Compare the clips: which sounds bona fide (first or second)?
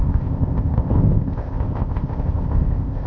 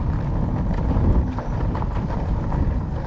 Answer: second